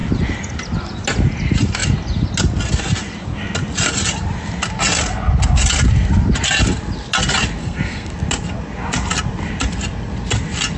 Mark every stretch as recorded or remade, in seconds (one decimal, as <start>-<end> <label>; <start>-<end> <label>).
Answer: 0.0-7.6 recorded; 7.6-8.1 remade; 8.1-10.8 recorded